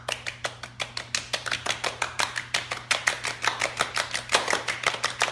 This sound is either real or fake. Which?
real